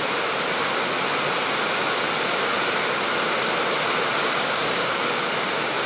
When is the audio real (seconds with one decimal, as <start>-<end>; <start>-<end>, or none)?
0.0-4.2; 5.2-5.9